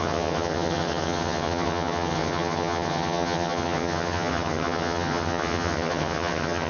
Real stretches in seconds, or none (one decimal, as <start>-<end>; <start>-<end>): none